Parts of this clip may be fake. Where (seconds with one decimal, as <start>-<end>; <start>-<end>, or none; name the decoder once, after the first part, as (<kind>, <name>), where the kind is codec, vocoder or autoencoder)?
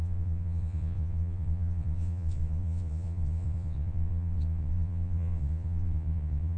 0.0-6.6 (vocoder, Vocos)